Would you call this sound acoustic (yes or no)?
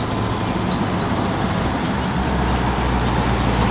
yes